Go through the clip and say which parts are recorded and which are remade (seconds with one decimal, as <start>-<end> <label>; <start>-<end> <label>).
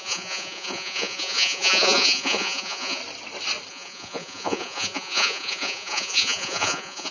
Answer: 0.0-3.0 remade; 3.0-3.7 recorded; 3.7-7.1 remade